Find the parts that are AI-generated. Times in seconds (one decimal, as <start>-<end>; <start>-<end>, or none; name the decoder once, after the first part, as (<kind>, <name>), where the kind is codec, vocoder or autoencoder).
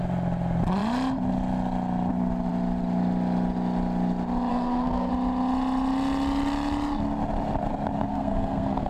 4.5-5.1 (codec, SNAC); 8.1-8.9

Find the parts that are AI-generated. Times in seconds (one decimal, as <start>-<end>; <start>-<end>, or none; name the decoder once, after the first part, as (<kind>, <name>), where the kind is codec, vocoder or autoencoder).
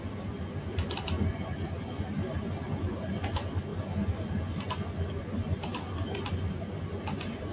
none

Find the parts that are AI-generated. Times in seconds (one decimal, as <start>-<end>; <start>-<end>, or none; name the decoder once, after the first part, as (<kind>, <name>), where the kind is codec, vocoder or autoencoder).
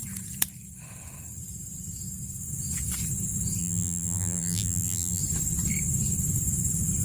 3.6-5.2 (vocoder, BigVGAN v2)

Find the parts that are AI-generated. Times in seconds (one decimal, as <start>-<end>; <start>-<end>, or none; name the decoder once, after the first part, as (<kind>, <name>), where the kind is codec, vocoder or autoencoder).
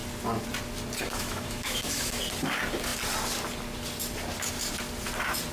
1.0-2.2 (autoencoder, DAC-VAE)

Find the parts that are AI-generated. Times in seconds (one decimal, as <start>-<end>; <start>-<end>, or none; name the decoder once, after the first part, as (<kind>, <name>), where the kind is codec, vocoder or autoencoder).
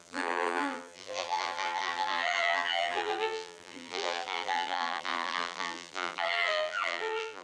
0.0-7.4 (vocoder, BigVGAN v2)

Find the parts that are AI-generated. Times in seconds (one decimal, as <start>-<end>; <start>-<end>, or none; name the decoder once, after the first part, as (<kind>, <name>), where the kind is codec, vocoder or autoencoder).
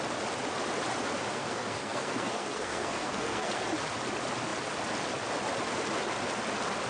1.3-3.6 (codec, SNAC)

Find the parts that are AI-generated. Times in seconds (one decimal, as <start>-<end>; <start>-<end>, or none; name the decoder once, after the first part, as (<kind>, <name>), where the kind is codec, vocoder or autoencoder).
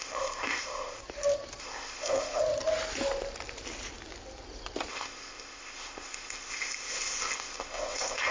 0.0-1.0 (codec, ZipCodec); 1.6-2.4; 4.9-8.3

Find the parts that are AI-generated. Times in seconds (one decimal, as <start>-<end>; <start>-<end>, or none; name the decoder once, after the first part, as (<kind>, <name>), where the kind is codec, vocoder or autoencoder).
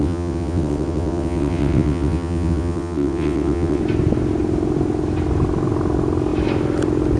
0.0-3.8 (vocoder, WaveNeXt)